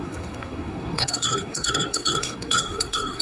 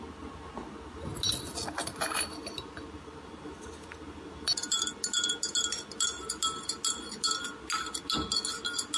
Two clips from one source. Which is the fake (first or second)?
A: first